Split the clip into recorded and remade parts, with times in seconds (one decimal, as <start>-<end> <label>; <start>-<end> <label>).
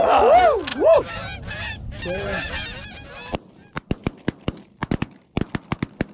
0.0-0.7 recorded; 0.7-2.5 remade; 2.5-6.1 recorded